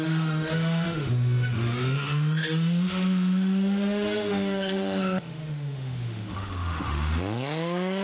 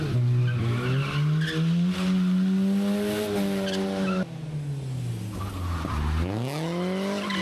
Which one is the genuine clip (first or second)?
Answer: second